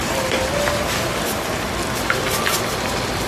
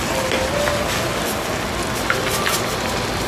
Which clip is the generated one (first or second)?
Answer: first